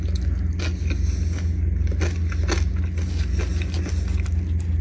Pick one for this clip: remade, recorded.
recorded